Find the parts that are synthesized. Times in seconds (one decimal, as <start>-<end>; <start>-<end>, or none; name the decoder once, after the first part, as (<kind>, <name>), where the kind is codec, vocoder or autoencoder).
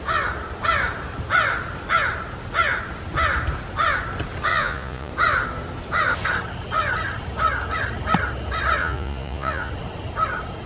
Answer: 4.5-5.1 (vocoder, Vocos); 8.8-9.7